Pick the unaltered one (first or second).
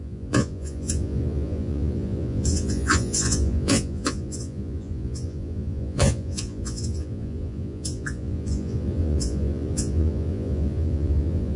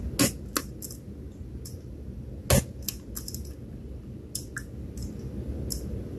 second